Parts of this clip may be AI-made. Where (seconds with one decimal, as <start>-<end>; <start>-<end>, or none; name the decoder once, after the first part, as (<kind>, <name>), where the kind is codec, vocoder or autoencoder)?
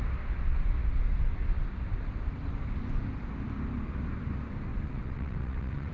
4.7-5.9 (vocoder, WaveNeXt)